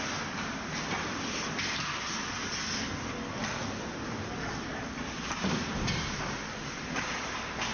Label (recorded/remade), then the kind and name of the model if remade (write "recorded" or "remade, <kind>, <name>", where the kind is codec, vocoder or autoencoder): recorded